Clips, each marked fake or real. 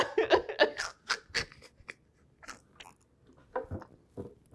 real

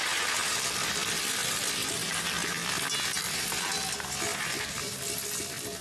real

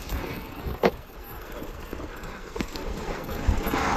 fake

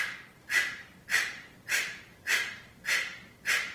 real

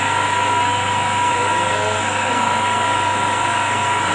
fake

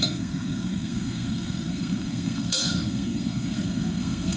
fake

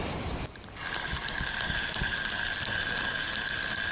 real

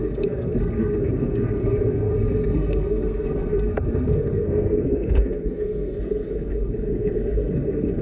fake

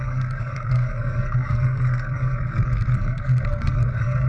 fake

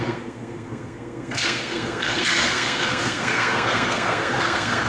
fake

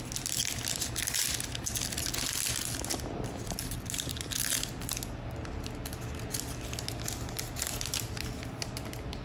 real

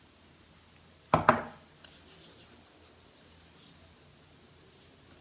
real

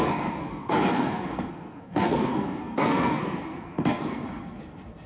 fake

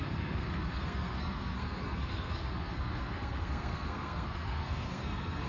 fake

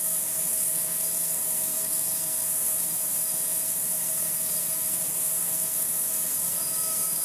fake